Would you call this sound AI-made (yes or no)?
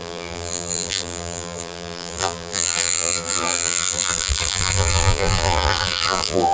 yes